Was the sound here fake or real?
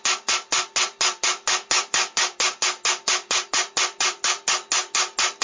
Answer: real